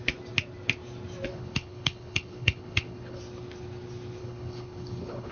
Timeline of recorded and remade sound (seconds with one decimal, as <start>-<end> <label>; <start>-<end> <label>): 0.0-1.3 recorded; 1.3-3.2 remade; 3.2-4.2 recorded; 4.2-5.3 remade